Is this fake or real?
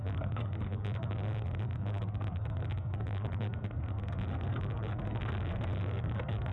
fake